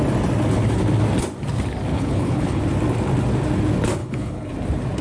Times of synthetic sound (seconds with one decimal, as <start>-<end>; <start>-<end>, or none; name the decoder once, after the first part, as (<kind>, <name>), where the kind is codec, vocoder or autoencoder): 1.9-2.6 (codec, HILCodec); 4.0-4.5